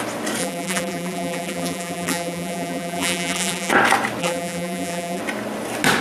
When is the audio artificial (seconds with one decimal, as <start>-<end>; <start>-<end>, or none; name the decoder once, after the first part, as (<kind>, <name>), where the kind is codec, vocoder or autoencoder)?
0.4-3.7 (vocoder, BigVGAN v2); 4.2-5.2